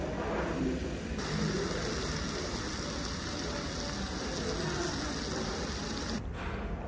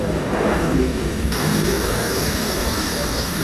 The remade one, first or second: second